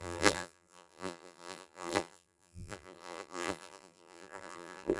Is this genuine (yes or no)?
no